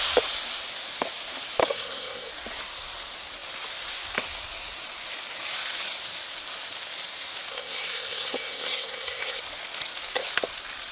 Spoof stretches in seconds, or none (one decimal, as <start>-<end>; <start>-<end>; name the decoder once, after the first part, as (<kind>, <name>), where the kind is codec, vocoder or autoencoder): 1.6-2.3 (codec, SNAC); 7.5-9.4

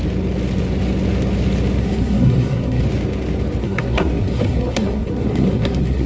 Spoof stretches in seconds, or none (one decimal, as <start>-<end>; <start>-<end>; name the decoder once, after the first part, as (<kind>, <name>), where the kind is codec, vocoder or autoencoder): 1.8-2.8 (codec, SNAC); 3.6-6.1

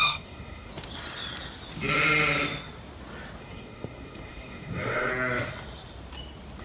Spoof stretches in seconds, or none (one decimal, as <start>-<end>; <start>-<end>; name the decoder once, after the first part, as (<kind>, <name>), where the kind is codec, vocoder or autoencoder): 0.0-0.7 (codec, SNAC); 3.4-5.1